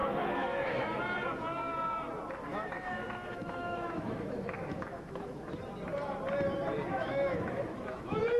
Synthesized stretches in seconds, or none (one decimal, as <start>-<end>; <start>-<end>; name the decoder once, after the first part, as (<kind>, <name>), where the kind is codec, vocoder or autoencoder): 0.0-1.0 (autoencoder, DAC-VAE); 2.5-5.6; 6.9-8.4